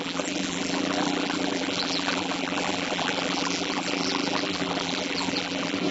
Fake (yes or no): yes